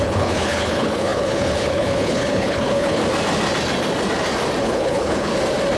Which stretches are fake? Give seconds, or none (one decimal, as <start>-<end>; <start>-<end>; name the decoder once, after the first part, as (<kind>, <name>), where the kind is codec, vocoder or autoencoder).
0.0-3.0 (codec, HILCodec); 4.6-5.3